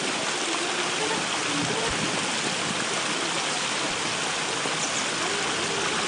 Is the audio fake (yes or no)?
no